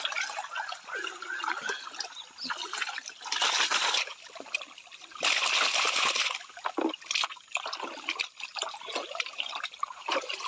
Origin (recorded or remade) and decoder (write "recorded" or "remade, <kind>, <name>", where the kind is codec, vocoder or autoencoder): recorded